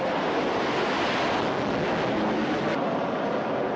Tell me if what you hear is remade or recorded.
recorded